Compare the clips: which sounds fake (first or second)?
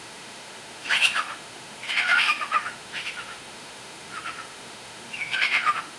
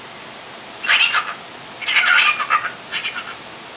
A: first